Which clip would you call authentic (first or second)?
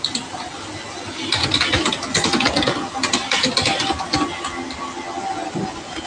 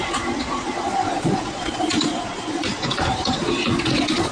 first